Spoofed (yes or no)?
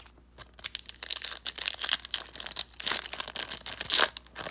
no